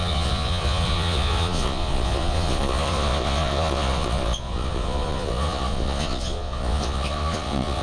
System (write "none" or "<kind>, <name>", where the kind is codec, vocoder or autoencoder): vocoder, Vocos